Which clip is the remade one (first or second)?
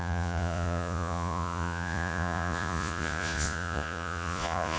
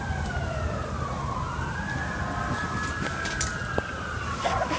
first